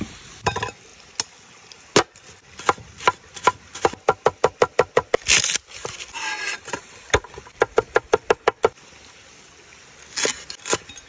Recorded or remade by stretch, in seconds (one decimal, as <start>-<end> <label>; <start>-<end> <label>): 0.0-11.1 recorded